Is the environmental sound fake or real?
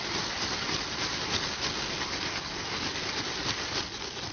real